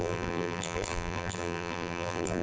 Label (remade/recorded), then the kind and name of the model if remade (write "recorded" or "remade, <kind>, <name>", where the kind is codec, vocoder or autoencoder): remade, vocoder, BigVGAN v2